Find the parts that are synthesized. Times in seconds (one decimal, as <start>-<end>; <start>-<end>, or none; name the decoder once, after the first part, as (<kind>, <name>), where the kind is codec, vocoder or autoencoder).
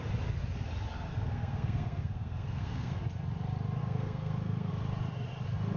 1.1-3.0 (codec, SNAC); 3.8-4.7